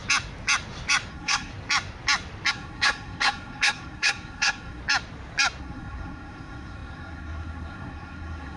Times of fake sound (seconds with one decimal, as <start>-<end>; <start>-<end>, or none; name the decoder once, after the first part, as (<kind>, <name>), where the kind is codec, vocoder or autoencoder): 1.1-1.5 (codec, SNAC); 2.5-4.8; 5.6-8.6